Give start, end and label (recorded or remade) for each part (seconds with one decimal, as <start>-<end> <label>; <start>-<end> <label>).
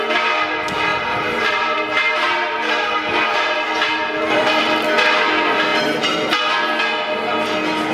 0.0-0.9 recorded; 0.9-4.6 remade; 4.6-7.9 recorded